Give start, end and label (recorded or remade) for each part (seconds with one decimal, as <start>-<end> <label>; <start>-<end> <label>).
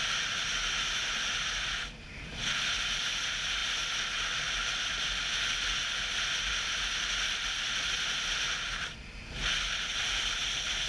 0.0-10.9 recorded